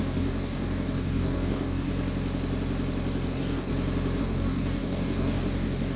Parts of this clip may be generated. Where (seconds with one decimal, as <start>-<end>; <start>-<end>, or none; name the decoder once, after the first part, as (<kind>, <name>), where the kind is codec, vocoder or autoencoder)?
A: 0.0-1.9 (codec, DAC); 3.3-3.7; 4.2-6.0